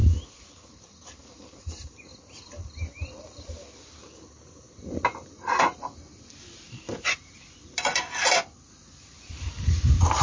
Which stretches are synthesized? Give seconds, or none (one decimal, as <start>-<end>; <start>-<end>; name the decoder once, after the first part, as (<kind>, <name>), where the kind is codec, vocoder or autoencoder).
none